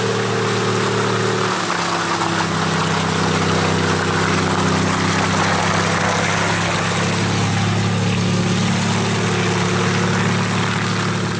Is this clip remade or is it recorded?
recorded